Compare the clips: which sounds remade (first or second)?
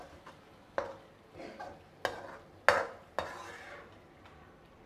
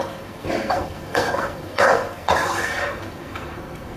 second